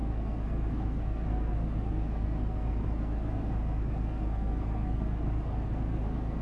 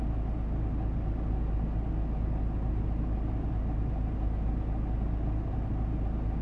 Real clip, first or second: second